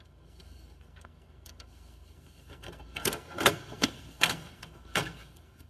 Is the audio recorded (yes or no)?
no